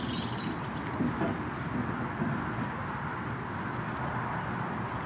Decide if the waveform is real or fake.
real